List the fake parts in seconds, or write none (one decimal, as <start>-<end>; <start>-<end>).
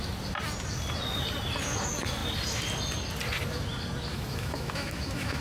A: 4.1-5.4